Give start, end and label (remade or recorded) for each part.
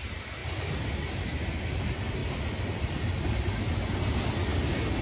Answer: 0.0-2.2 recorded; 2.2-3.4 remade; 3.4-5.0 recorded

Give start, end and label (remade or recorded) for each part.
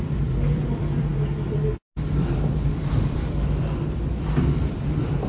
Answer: 0.0-1.1 remade; 1.1-2.7 recorded; 2.7-5.3 remade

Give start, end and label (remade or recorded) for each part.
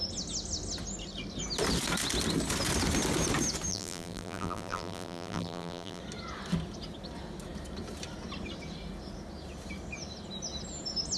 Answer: 0.0-3.7 recorded; 3.7-6.0 remade; 6.0-11.2 recorded